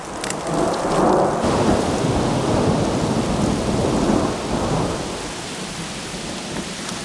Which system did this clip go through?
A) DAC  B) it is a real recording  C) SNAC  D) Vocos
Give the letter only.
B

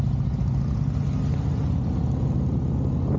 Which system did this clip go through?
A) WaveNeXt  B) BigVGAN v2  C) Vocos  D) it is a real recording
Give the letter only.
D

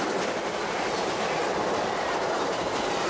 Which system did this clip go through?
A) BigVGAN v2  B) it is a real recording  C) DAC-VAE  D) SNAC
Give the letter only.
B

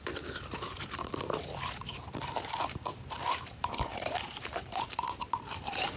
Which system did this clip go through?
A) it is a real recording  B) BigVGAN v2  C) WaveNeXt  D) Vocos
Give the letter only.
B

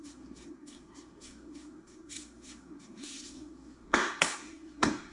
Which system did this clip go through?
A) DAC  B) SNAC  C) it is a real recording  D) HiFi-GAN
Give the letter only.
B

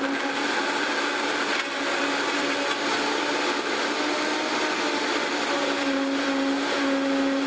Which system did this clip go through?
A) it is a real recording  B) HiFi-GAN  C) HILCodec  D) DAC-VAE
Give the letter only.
A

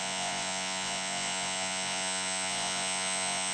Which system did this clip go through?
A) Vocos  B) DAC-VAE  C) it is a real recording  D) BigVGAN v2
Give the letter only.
A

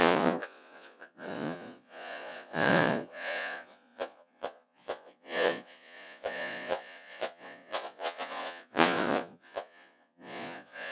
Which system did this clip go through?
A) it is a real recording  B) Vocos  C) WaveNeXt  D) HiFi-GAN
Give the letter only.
B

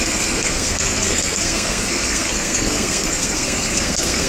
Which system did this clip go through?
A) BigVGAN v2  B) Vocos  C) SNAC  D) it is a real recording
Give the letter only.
C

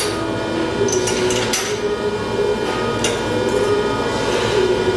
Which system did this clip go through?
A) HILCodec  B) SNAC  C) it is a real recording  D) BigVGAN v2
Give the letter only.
C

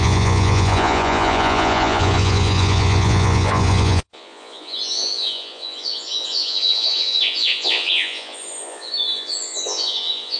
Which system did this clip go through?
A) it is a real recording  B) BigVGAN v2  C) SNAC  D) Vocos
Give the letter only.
D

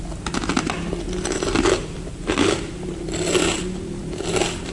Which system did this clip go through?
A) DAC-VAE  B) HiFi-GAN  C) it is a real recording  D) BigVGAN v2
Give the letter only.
C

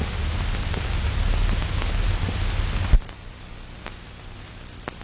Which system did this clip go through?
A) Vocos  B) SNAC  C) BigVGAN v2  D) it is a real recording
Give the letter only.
D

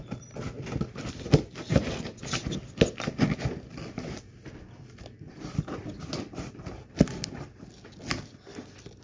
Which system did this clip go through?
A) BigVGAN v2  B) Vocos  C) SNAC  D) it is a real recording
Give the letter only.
D